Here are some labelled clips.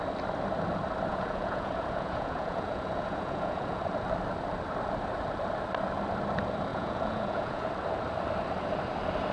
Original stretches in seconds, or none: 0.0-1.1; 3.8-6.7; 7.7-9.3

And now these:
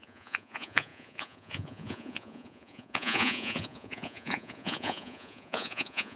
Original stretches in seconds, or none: none

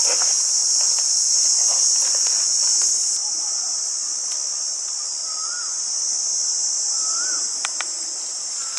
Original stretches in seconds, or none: 0.0-8.8

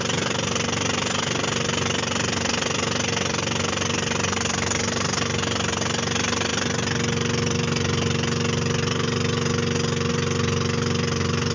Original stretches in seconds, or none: 0.0-11.5